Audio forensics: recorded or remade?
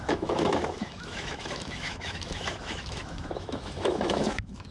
remade